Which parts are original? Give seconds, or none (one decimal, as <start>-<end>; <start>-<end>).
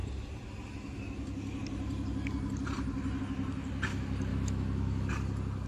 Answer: 0.0-4.3; 5.1-5.7